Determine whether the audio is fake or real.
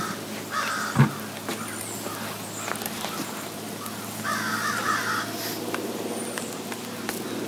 real